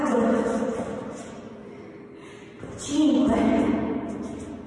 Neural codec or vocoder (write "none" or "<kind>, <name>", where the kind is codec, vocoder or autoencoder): none